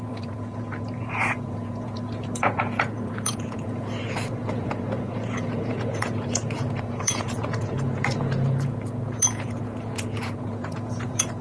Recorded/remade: remade